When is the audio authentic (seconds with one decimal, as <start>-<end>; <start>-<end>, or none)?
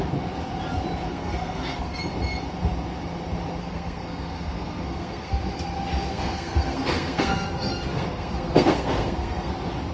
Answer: 0.0-1.1; 2.0-3.6; 5.4-6.1; 9.5-9.9